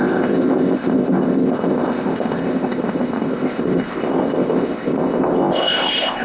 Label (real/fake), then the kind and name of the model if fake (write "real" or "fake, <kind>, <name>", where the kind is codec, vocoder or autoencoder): fake, codec, ZipCodec